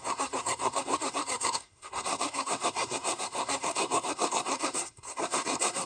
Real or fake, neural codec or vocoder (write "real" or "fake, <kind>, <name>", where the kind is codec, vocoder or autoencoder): fake, codec, SNAC